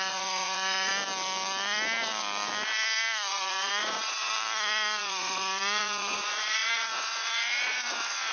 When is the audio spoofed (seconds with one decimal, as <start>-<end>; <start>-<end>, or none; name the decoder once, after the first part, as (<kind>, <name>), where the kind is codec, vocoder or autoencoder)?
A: 0.0-0.9 (vocoder, Vocos); 3.3-4.3; 5.0-8.3